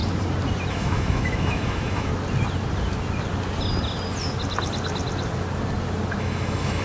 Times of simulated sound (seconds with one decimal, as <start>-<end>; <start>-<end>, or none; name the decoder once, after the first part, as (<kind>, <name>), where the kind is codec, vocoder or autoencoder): 0.7-2.1 (autoencoder, DAC-VAE); 6.2-6.8